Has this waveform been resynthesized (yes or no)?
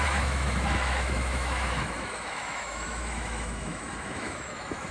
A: yes